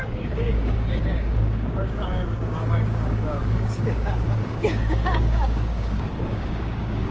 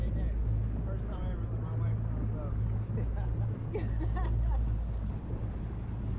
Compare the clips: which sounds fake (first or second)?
first